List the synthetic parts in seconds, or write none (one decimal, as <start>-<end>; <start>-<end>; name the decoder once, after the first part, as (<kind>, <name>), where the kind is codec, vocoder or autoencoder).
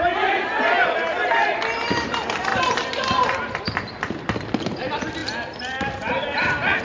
none